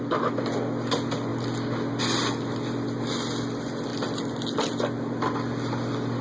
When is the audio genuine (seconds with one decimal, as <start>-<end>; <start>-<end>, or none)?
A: 0.0-6.2